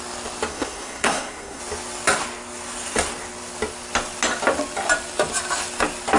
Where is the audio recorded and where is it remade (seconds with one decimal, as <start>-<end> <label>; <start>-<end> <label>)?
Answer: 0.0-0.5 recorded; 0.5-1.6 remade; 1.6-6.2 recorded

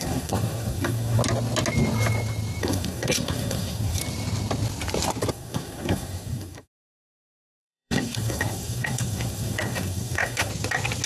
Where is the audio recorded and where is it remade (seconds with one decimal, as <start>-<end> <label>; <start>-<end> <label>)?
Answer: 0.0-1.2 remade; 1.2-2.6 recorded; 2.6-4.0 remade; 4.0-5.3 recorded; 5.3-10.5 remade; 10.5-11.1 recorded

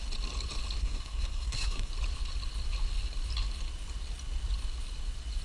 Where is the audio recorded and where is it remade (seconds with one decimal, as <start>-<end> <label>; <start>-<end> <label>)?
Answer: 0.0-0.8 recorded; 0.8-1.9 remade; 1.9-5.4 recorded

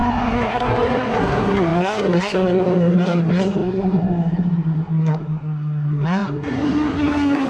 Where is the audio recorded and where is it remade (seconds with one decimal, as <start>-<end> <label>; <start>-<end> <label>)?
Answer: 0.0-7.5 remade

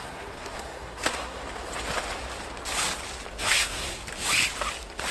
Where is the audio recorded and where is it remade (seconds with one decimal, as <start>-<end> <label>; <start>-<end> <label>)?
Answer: 0.0-1.4 remade; 1.4-3.4 recorded; 3.4-4.0 remade; 4.0-5.1 recorded

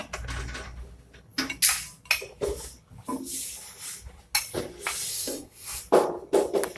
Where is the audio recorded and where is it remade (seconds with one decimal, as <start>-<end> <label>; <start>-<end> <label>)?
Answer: 0.0-5.1 recorded; 5.1-5.8 remade; 5.8-6.8 recorded

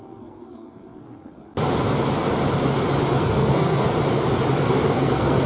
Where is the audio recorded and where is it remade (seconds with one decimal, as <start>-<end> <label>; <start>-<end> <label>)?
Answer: 0.0-1.5 remade; 1.5-3.1 recorded; 3.1-3.9 remade; 3.9-4.6 recorded; 4.6-5.5 remade